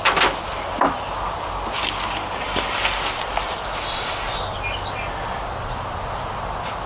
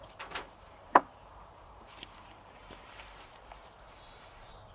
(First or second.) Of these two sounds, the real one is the first